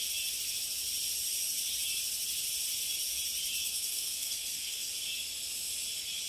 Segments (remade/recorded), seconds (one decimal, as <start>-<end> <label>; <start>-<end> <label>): 0.0-3.6 recorded; 3.6-4.9 remade; 4.9-6.3 recorded